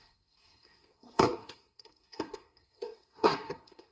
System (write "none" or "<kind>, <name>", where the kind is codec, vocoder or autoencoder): codec, SNAC